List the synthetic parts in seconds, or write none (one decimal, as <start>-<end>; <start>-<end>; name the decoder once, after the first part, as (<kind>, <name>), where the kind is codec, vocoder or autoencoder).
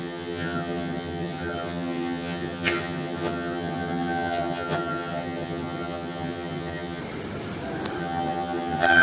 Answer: 0.0-7.0 (vocoder, HiFi-GAN); 8.0-9.0